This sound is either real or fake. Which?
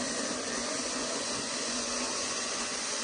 fake